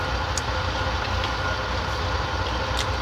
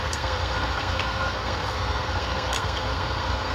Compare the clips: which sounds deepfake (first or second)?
second